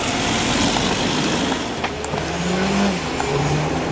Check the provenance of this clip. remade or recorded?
recorded